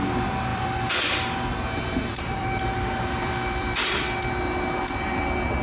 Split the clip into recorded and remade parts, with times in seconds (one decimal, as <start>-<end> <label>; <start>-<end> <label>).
0.0-0.5 recorded; 0.5-3.9 remade; 3.9-5.6 recorded